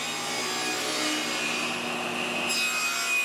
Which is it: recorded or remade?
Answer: recorded